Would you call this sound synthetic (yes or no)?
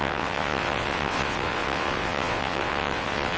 yes